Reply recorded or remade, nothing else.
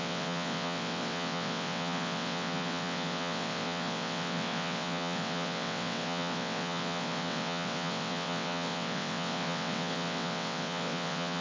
remade